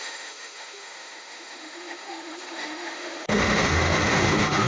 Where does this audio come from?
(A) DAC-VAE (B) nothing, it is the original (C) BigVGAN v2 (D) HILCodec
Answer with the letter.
A